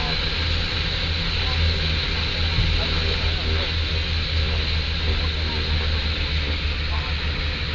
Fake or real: real